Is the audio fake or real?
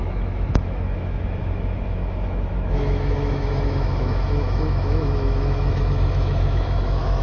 fake